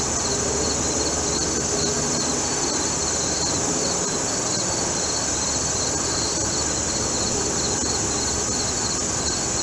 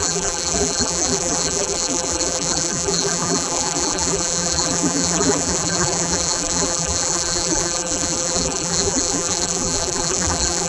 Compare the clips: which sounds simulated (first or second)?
second